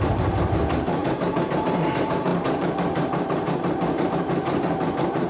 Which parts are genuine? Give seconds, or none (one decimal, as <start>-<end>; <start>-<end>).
none